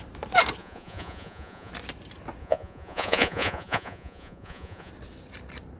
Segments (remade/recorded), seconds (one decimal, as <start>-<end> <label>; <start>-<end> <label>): 0.0-0.6 recorded; 0.6-1.7 remade; 1.7-2.4 recorded; 2.4-4.9 remade; 4.9-5.8 recorded

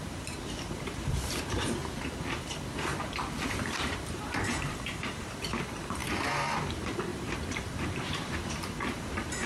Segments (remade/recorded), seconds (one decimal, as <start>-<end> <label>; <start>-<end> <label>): 0.0-1.8 remade; 1.8-2.4 recorded; 2.4-2.9 remade; 2.9-3.5 recorded; 3.5-9.5 remade

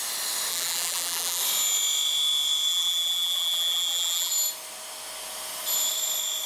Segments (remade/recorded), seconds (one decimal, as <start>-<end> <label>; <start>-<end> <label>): 0.0-0.5 recorded; 0.5-1.4 remade; 1.4-2.7 recorded; 2.7-4.3 remade; 4.3-6.5 recorded

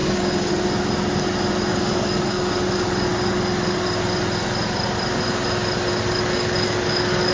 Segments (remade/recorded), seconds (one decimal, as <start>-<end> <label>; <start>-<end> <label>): 0.0-0.5 remade; 0.5-1.7 recorded; 1.7-2.5 remade; 2.5-5.9 recorded; 5.9-7.3 remade

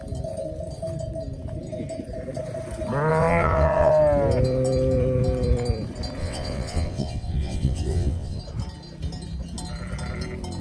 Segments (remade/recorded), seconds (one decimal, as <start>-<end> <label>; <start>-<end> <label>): 0.0-3.1 recorded; 3.1-3.9 remade; 3.9-6.2 recorded; 6.2-8.4 remade; 8.4-10.6 recorded